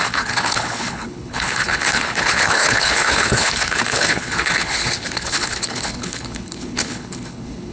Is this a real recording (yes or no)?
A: no